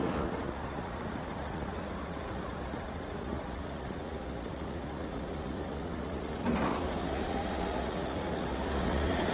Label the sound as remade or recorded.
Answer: remade